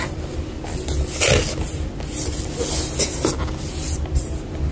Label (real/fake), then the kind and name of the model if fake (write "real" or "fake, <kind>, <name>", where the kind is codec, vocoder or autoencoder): real